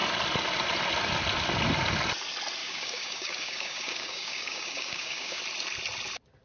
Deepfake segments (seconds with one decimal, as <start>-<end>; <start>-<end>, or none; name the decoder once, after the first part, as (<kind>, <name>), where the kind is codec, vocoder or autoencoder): 2.6-5.4 (codec, DAC)